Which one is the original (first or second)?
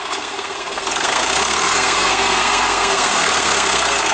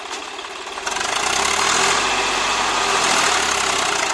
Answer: second